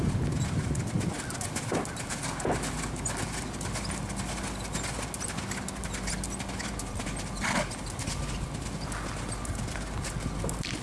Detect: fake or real real